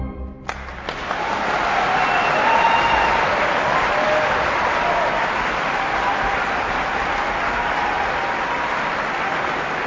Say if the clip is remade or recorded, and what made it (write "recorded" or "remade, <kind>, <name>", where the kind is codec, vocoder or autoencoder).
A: recorded